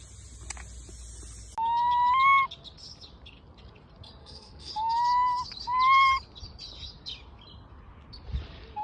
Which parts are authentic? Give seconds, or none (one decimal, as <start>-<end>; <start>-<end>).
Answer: 0.0-4.2; 4.7-8.8